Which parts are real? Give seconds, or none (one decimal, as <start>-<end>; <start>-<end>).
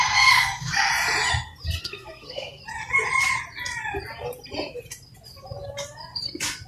0.9-1.8; 2.6-6.7